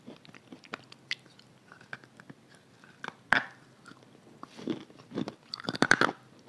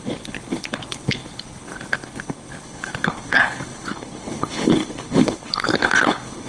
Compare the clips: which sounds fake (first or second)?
second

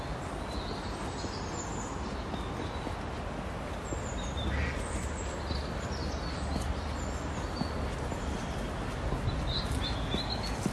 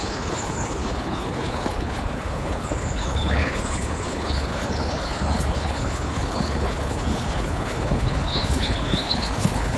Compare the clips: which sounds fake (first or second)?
second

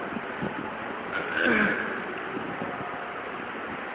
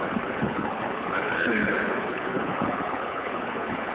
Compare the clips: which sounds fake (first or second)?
second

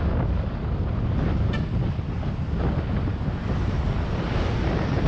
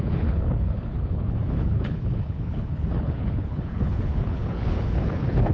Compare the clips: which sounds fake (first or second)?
second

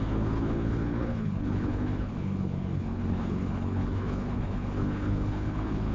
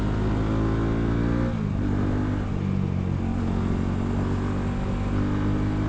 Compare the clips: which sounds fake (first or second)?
first